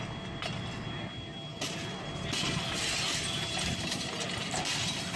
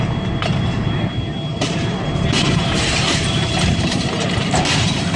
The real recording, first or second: first